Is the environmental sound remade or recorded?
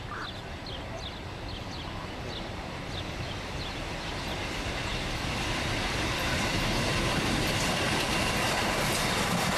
recorded